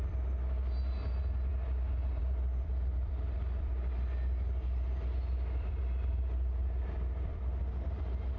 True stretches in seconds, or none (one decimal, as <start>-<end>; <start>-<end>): 1.5-2.2